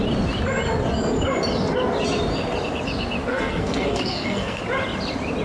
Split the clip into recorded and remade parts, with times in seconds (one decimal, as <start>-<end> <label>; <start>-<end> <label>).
0.0-3.3 recorded; 3.3-4.6 remade; 4.6-5.4 recorded